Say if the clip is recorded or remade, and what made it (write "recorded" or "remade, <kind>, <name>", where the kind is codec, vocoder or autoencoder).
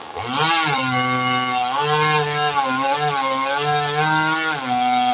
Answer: recorded